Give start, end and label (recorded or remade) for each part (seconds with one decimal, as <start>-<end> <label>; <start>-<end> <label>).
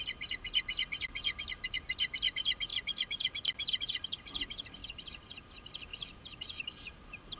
0.0-4.8 recorded; 4.8-5.5 remade; 5.5-5.9 recorded; 5.9-7.4 remade